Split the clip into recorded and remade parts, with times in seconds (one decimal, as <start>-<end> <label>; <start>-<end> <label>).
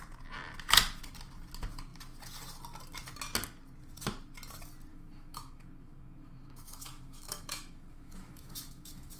0.0-4.9 recorded; 4.9-9.2 remade